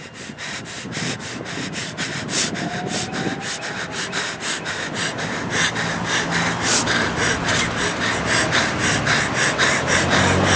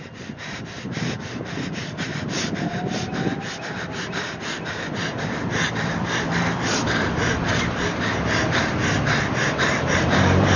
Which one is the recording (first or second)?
first